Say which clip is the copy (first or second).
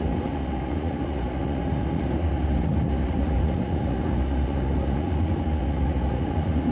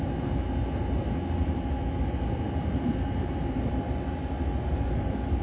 first